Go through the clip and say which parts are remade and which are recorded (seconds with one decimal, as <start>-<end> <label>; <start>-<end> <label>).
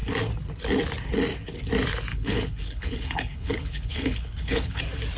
0.0-2.1 recorded; 2.1-4.8 remade; 4.8-5.2 recorded